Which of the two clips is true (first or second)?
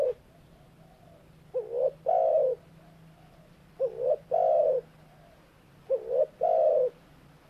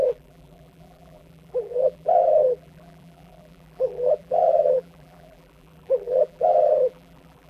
first